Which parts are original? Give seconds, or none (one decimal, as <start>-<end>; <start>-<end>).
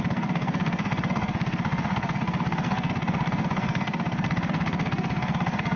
none